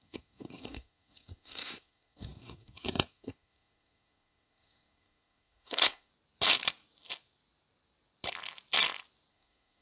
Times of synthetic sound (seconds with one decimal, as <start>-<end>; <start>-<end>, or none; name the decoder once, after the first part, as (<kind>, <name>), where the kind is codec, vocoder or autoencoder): 0.0-6.1 (codec, SNAC); 9.3-9.8